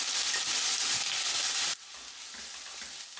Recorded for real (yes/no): yes